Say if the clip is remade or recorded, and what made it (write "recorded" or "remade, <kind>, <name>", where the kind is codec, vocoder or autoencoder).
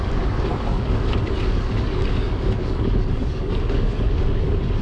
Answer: remade, codec, DAC